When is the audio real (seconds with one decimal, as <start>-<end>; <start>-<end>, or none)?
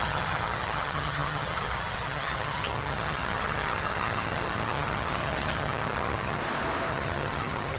6.4-6.9